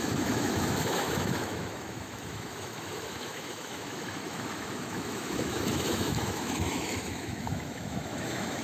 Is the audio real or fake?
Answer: fake